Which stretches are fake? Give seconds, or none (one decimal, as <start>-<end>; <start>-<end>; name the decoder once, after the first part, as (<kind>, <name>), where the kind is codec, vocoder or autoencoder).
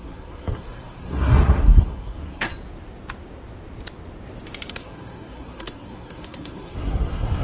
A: 0.0-2.5 (codec, SNAC); 4.7-7.4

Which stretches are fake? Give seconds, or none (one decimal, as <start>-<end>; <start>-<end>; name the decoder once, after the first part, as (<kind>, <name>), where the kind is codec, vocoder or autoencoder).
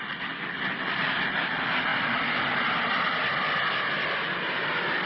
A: none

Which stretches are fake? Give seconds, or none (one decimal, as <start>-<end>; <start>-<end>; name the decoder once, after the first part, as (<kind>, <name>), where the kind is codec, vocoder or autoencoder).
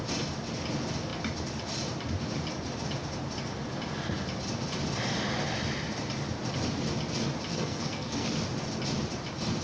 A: 7.5-8.3 (codec, SNAC)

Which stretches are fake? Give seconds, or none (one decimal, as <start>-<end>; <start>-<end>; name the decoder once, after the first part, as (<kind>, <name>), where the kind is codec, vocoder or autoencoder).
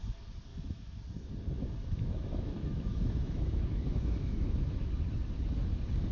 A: 0.5-1.0 (autoencoder, DAC-VAE); 1.9-4.7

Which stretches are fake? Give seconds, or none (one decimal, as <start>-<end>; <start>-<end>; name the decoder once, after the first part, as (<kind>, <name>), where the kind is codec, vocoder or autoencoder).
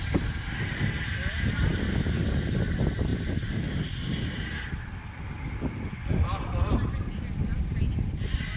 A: none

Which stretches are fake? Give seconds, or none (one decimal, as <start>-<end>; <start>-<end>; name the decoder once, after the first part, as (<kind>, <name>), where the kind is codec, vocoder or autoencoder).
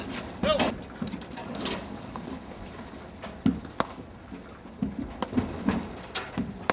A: 1.4-2.6 (codec, DAC)